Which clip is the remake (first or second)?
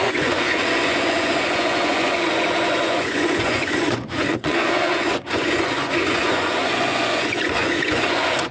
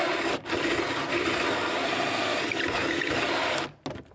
first